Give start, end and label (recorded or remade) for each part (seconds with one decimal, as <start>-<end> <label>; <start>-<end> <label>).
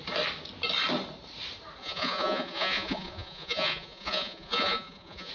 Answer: 0.0-1.8 recorded; 1.8-5.3 remade